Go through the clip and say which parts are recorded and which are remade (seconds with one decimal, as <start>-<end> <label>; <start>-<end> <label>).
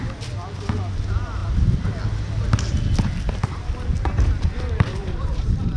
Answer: 0.0-5.0 recorded; 5.0-5.8 remade